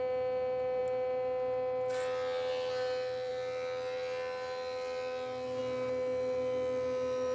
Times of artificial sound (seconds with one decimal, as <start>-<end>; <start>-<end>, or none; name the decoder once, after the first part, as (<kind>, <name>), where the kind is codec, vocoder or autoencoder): none